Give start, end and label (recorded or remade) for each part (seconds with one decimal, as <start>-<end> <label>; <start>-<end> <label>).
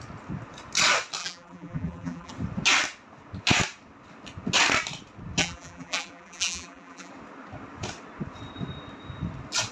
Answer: 0.0-1.2 recorded; 1.2-2.3 remade; 2.3-5.4 recorded; 5.4-7.1 remade; 7.1-9.7 recorded